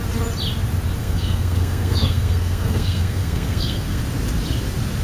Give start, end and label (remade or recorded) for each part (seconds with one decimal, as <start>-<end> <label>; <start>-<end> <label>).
0.0-1.0 recorded; 1.0-4.0 remade; 4.0-5.0 recorded